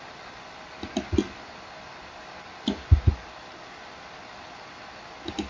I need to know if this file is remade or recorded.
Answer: recorded